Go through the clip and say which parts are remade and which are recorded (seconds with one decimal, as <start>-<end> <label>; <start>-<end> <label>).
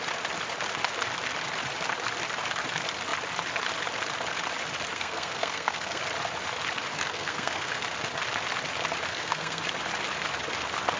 0.0-4.9 recorded; 4.9-6.0 remade; 6.0-6.9 recorded; 6.9-7.8 remade; 7.8-9.1 recorded; 9.1-9.6 remade; 9.6-11.0 recorded